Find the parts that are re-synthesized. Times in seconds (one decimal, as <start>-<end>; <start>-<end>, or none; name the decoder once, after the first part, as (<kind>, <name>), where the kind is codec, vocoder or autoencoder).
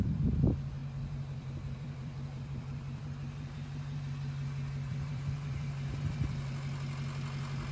0.8-4.0 (vocoder, BigVGAN v2); 4.9-6.5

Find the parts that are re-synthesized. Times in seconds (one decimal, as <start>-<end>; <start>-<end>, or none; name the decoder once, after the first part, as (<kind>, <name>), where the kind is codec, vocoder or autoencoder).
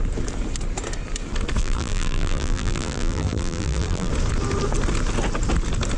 1.6-4.1 (vocoder, BigVGAN v2)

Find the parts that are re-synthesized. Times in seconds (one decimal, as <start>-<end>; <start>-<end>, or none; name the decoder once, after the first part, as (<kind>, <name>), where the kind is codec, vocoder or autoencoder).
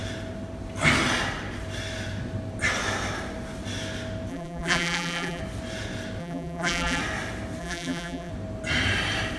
4.3-5.4 (vocoder, BigVGAN v2); 6.2-7.0; 7.6-8.3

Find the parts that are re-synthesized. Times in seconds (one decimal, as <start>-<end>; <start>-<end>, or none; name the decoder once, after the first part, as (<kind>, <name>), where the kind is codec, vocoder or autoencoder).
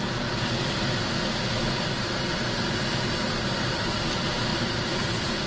3.3-5.5 (vocoder, BigVGAN v2)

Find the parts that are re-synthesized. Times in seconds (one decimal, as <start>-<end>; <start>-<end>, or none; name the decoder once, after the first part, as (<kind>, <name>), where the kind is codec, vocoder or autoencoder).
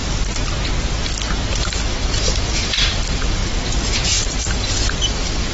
1.6-3.4 (vocoder, BigVGAN v2); 4.2-5.5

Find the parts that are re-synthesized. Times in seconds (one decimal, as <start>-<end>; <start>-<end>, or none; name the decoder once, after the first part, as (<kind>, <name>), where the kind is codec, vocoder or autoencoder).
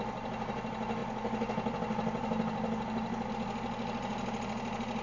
none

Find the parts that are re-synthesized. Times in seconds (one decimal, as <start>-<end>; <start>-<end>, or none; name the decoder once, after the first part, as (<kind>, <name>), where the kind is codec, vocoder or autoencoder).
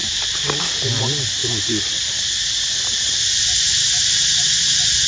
0.0-0.6 (vocoder, BigVGAN v2); 1.4-4.5